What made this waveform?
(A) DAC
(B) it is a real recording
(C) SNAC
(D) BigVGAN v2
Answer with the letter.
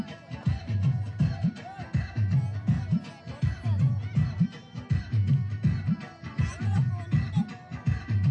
B